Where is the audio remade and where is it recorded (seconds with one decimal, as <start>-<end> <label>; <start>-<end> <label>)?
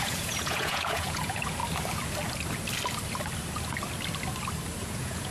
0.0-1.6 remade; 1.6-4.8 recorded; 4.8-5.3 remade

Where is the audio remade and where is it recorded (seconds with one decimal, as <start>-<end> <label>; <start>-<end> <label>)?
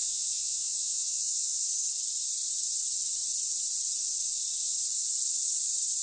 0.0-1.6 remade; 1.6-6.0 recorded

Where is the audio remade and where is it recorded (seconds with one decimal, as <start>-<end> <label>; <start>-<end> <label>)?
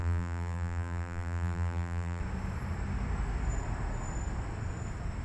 0.0-2.2 remade; 2.2-5.2 recorded